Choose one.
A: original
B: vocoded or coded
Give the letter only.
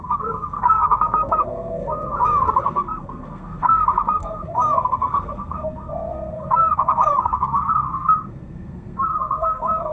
B